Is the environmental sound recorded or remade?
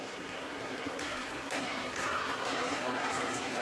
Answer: remade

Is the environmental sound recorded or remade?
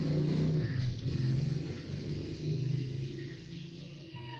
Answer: remade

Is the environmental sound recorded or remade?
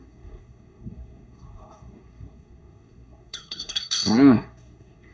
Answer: remade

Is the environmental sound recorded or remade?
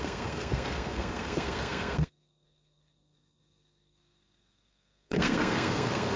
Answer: remade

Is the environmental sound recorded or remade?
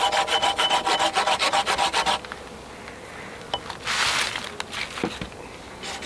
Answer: recorded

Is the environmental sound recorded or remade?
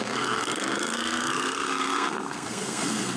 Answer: remade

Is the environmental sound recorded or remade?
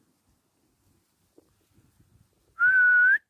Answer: recorded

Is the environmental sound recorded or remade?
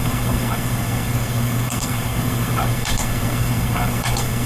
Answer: remade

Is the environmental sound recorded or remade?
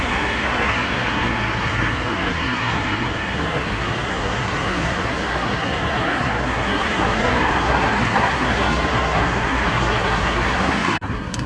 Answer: remade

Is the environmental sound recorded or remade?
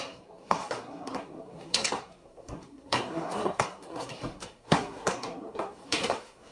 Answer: remade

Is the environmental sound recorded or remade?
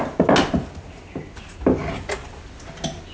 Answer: recorded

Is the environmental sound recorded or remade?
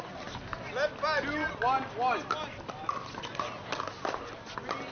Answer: recorded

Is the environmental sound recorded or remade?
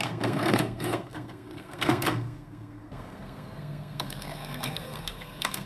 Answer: remade